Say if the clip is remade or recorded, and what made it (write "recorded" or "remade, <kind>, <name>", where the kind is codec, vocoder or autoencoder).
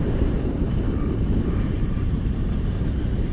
remade, vocoder, BigVGAN v2